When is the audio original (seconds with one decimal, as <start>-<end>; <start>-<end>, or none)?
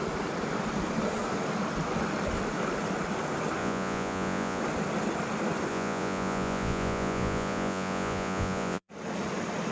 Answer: 0.0-3.6; 4.6-5.7; 8.9-9.7